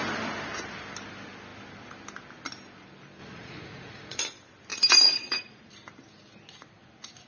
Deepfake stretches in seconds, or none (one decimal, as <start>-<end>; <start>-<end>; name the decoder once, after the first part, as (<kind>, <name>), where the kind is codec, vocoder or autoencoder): 3.2-4.2 (vocoder, Vocos); 4.7-5.7